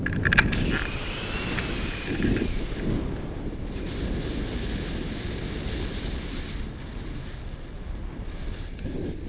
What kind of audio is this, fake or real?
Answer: real